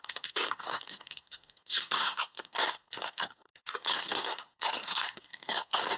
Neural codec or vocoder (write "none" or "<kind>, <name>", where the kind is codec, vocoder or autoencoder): codec, SNAC